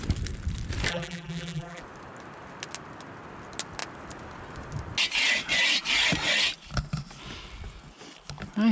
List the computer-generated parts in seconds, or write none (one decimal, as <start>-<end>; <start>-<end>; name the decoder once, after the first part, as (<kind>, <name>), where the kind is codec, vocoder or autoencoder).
0.9-1.8 (vocoder, BigVGAN v2)